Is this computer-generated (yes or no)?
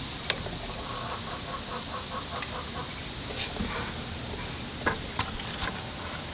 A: no